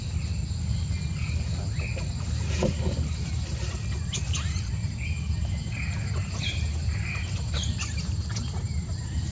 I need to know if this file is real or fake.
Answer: real